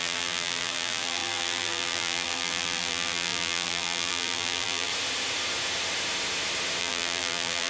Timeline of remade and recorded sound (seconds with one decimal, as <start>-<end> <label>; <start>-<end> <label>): 0.0-4.9 remade; 4.9-6.8 recorded; 6.8-7.7 remade